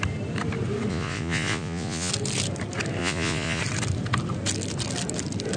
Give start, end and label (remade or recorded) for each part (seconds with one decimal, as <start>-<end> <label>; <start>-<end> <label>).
0.0-0.9 recorded; 0.9-2.1 remade; 2.1-3.0 recorded; 3.0-3.6 remade; 3.6-5.6 recorded